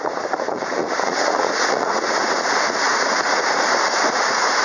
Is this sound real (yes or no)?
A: no